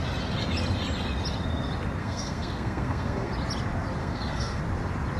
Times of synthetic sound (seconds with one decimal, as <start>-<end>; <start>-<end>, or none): 2.0-3.3; 4.0-4.6